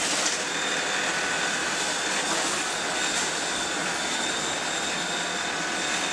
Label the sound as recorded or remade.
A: recorded